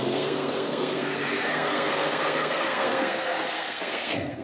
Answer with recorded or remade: remade